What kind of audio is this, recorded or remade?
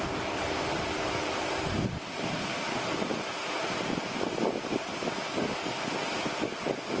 recorded